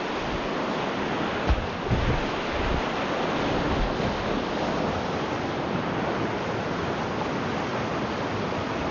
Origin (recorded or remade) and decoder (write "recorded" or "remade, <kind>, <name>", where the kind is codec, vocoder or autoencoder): recorded